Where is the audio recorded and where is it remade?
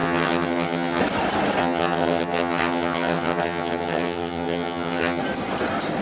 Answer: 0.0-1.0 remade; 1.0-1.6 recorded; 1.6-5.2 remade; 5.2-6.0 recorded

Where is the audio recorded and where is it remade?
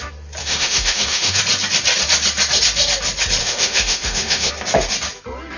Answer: 0.0-0.4 recorded; 0.4-1.4 remade; 1.4-3.4 recorded; 3.4-4.5 remade; 4.5-5.6 recorded